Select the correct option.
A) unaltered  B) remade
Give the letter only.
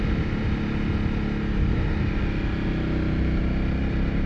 A